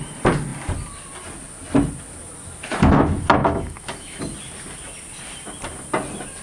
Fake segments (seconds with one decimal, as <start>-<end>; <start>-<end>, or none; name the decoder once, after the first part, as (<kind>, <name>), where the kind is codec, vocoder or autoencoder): 3.4-4.2 (autoencoder, DAC-VAE)